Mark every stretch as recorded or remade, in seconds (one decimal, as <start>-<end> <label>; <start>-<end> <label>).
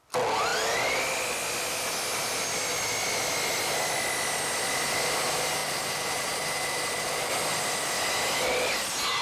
0.0-5.6 recorded; 5.6-7.3 remade; 7.3-9.2 recorded